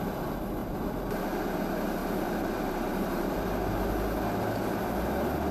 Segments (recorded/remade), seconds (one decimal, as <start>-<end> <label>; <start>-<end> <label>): 0.0-2.0 recorded; 2.0-3.3 remade; 3.3-5.5 recorded